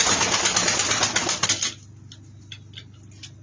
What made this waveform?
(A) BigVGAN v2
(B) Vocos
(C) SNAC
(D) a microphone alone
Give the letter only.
D